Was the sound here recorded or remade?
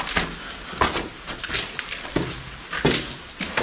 recorded